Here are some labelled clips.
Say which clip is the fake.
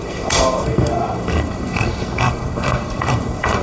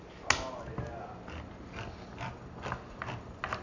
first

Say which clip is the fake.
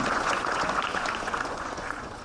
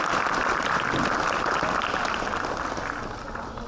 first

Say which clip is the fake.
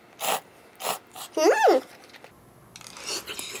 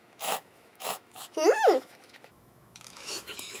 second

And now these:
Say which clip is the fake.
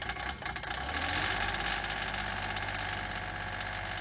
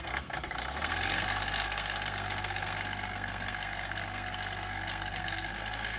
second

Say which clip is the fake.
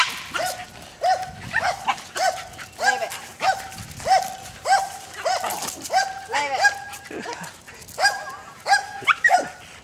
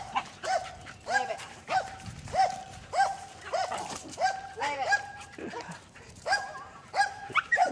second